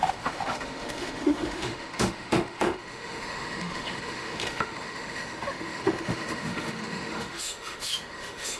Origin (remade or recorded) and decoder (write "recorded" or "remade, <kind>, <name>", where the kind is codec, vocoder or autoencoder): remade, autoencoder, DAC-VAE